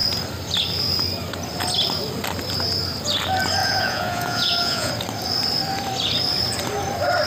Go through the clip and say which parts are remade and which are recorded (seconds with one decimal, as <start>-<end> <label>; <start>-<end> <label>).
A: 0.0-3.6 recorded; 3.6-4.9 remade; 4.9-7.3 recorded